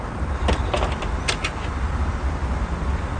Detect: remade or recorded recorded